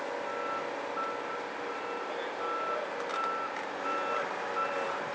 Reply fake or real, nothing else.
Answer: real